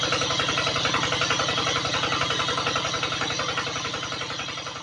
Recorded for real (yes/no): yes